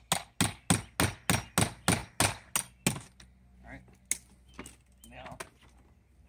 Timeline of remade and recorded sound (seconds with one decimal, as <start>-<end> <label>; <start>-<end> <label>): 0.0-6.3 recorded